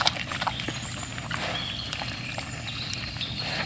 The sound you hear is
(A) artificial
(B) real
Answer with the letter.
B